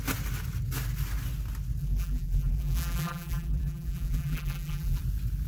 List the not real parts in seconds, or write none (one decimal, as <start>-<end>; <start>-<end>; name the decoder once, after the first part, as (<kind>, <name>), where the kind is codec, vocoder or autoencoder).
1.8-5.0 (vocoder, BigVGAN v2)